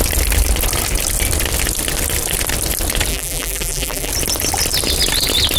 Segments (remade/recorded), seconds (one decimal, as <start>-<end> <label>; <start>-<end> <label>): 0.0-3.1 recorded; 3.1-4.1 remade; 4.1-5.6 recorded